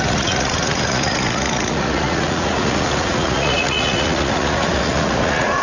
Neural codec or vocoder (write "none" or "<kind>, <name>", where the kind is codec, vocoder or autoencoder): vocoder, Vocos